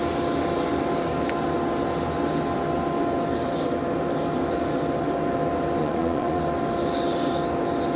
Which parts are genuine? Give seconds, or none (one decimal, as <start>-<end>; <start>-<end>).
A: 0.0-5.8; 6.4-8.0